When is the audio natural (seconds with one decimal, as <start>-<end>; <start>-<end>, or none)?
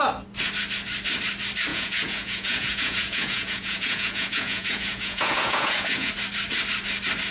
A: 0.0-1.7; 6.1-7.3